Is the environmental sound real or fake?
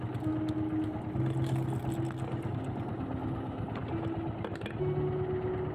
real